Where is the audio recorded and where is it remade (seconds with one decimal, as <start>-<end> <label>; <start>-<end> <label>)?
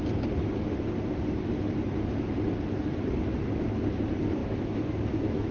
0.0-4.4 recorded; 4.4-5.5 remade